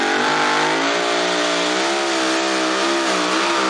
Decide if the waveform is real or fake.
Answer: real